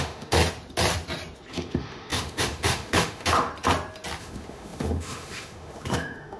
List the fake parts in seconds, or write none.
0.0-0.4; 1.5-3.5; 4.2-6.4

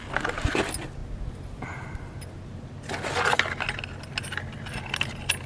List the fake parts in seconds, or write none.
none

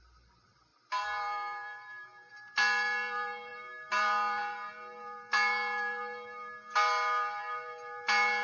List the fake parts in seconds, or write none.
none

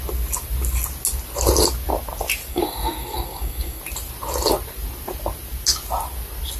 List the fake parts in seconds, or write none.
2.5-3.8

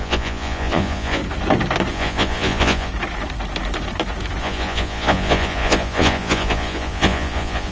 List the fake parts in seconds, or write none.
0.0-1.2; 1.9-2.9; 4.4-7.7